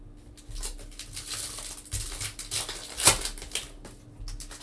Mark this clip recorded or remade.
recorded